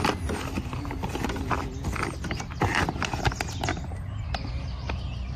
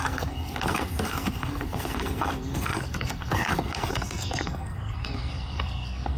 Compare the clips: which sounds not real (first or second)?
second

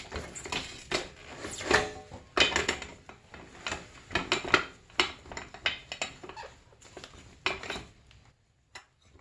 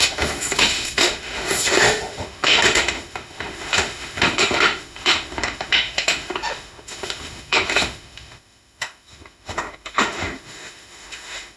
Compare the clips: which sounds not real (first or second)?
second